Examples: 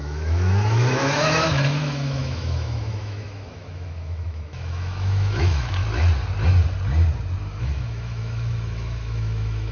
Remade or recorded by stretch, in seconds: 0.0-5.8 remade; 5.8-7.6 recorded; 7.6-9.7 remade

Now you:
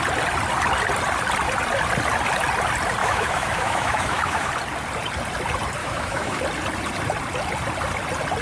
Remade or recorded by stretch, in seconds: 0.0-3.0 recorded; 3.0-4.5 remade; 4.5-5.8 recorded; 5.8-6.4 remade; 6.4-8.4 recorded

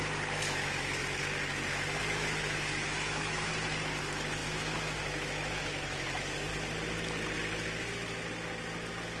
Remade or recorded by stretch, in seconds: 0.0-1.0 remade; 1.0-2.0 recorded; 2.0-3.5 remade; 3.5-4.0 recorded; 4.0-6.5 remade; 6.5-9.2 recorded

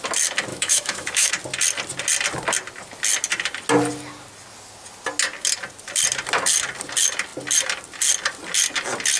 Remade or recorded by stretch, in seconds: 0.0-0.5 recorded; 0.5-1.3 remade; 1.3-9.2 recorded

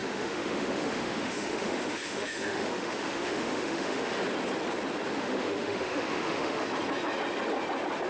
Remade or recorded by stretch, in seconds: 0.0-4.1 remade; 4.1-5.2 recorded; 5.2-6.6 remade; 6.6-8.1 recorded